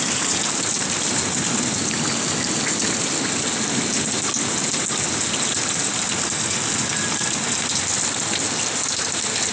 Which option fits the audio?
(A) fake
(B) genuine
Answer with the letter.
B